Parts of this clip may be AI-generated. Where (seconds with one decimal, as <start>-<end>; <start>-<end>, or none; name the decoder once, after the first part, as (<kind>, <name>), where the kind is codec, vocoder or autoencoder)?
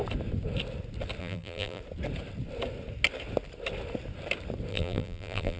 1.2-1.8 (vocoder, BigVGAN v2); 4.7-5.6